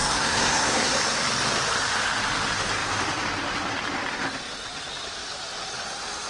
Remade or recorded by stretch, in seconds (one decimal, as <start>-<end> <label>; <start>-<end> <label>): 0.0-0.9 remade; 0.9-6.3 recorded